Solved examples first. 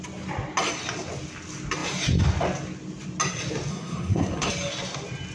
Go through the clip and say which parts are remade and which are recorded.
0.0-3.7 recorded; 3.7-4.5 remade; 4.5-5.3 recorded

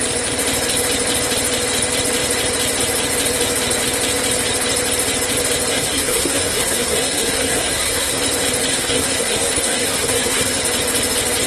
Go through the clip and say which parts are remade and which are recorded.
0.0-5.7 recorded; 5.7-8.2 remade; 8.2-8.7 recorded; 8.7-10.6 remade; 10.6-11.5 recorded

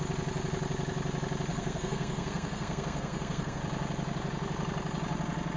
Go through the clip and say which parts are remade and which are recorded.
0.0-1.5 recorded; 1.5-3.6 remade; 3.6-5.6 recorded

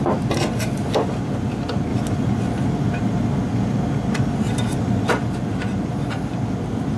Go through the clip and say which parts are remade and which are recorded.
0.0-7.0 recorded

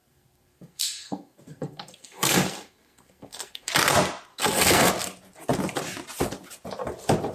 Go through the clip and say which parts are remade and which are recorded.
0.0-3.7 remade; 3.7-4.3 recorded; 4.3-4.9 remade; 4.9-7.3 recorded

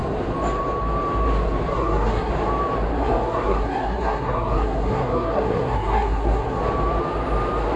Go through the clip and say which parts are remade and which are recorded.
0.0-1.7 recorded; 1.7-2.3 remade; 2.3-2.9 recorded; 2.9-6.6 remade; 6.6-7.8 recorded

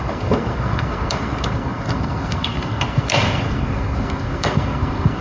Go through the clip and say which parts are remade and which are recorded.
0.0-5.2 remade